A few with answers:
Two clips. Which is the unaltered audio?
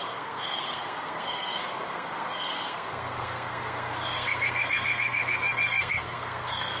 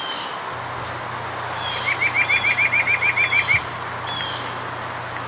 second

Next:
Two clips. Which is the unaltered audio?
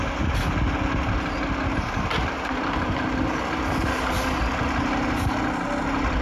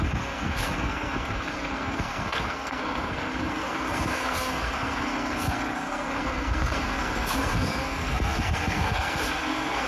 first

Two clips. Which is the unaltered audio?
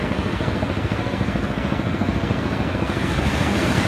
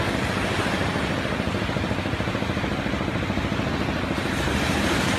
second